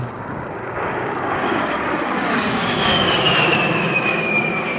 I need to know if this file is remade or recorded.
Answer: remade